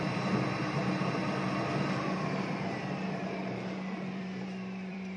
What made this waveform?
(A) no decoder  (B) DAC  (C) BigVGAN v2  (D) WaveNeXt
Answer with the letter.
C